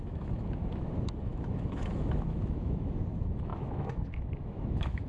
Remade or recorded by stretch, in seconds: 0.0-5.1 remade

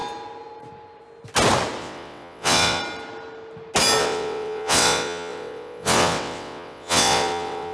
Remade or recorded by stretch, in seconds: 0.0-1.8 recorded; 1.8-2.8 remade; 2.8-4.0 recorded; 4.0-7.7 remade

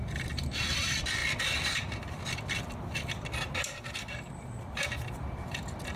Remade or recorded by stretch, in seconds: 0.0-6.0 remade

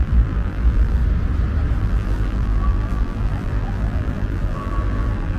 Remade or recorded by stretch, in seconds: 0.0-1.0 remade; 1.0-1.8 recorded; 1.8-5.4 remade

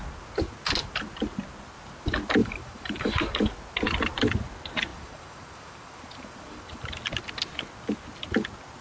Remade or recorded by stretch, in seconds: 0.0-2.4 recorded; 2.4-3.2 remade; 3.2-4.9 recorded; 4.9-7.0 remade; 7.0-8.8 recorded

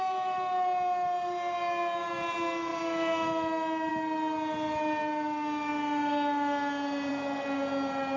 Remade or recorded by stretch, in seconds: 0.0-8.2 recorded